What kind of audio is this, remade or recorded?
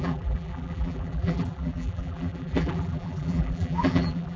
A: remade